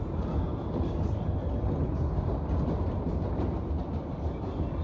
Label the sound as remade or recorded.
recorded